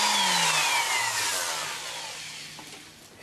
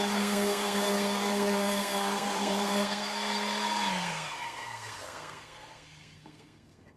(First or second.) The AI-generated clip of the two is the second